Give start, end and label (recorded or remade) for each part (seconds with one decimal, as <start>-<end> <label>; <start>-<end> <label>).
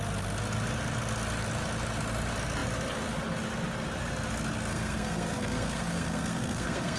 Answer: 0.0-4.7 recorded; 4.7-7.0 remade